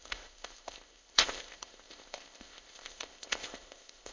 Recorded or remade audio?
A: remade